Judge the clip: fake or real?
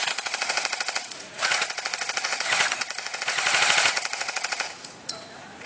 fake